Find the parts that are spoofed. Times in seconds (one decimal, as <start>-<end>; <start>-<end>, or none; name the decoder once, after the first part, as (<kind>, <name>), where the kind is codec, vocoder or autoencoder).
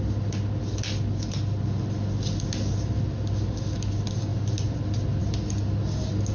none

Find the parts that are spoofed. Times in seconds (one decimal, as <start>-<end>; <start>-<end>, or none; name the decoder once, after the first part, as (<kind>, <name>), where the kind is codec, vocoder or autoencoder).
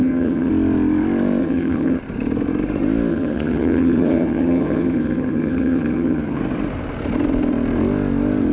0.0-0.5 (vocoder, HiFi-GAN); 1.4-2.0; 3.1-6.4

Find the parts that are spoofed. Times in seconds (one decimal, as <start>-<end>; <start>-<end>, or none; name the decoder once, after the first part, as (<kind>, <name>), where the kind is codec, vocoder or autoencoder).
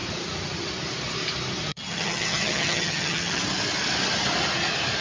1.7-3.4 (vocoder, HiFi-GAN)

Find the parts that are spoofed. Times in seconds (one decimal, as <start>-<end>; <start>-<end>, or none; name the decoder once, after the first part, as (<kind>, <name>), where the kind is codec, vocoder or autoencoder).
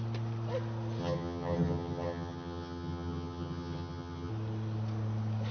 1.0-4.3 (vocoder, HiFi-GAN)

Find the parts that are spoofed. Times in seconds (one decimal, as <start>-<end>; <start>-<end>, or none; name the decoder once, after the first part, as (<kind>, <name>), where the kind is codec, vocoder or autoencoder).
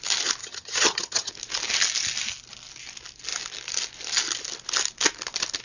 0.4-1.3 (vocoder, HiFi-GAN)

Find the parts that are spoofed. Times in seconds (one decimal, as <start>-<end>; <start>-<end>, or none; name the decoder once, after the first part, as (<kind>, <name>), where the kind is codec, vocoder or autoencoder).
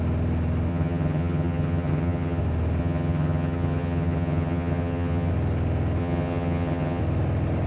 0.7-2.4 (vocoder, HiFi-GAN); 2.8-5.3; 6.0-7.0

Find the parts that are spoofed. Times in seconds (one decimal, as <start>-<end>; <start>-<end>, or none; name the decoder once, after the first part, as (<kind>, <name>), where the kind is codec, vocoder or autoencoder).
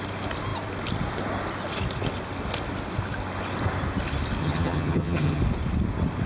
4.4-5.4 (vocoder, HiFi-GAN)